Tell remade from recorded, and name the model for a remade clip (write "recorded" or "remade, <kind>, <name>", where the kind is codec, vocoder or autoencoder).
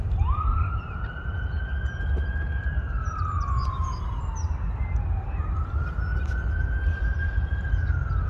recorded